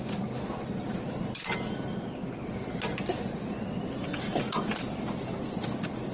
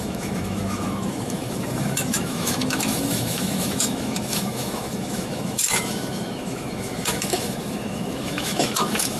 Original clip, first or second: first